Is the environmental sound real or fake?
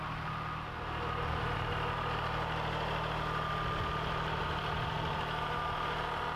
real